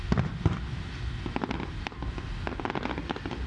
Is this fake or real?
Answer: real